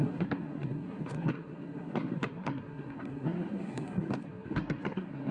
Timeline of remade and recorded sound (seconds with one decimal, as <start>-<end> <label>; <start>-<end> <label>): 0.0-5.3 remade